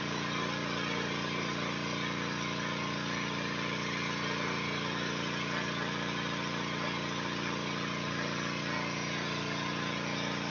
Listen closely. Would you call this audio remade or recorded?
recorded